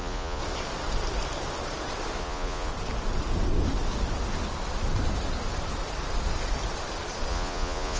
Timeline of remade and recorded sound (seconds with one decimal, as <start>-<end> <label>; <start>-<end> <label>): 0.0-0.4 remade; 0.4-2.2 recorded; 2.2-2.7 remade; 2.7-7.3 recorded; 7.3-8.0 remade